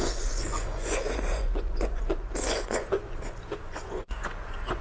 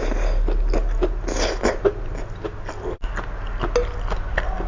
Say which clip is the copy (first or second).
first